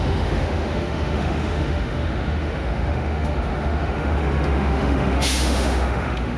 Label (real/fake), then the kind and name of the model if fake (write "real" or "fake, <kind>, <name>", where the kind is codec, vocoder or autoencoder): fake, autoencoder, DAC-VAE